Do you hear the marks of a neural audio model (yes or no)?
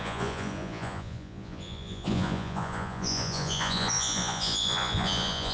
yes